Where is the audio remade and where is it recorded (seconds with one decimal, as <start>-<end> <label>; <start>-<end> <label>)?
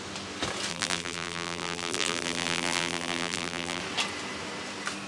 0.0-0.7 recorded; 0.7-3.8 remade; 3.8-5.1 recorded